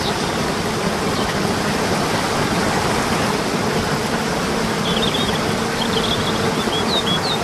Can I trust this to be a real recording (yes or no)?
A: no